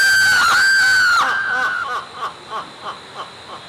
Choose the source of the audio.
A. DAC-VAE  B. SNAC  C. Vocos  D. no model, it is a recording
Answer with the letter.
D